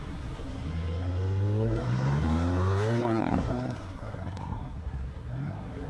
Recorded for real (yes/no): no